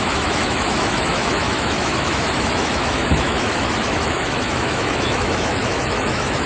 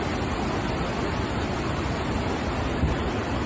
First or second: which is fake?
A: first